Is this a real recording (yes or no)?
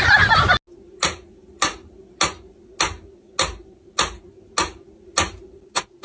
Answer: yes